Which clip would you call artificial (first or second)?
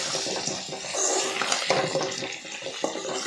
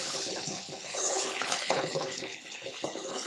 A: second